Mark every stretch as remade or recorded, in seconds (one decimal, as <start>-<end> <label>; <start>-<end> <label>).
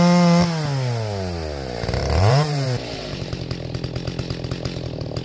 0.0-2.0 recorded; 2.0-3.4 remade; 3.4-5.2 recorded